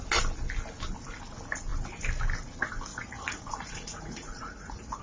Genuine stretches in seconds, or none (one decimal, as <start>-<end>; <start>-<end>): 0.0-2.9